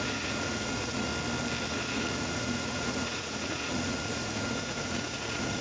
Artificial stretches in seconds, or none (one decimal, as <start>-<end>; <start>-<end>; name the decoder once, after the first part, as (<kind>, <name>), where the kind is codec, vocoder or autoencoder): 0.0-1.1 (vocoder, Vocos); 1.6-5.6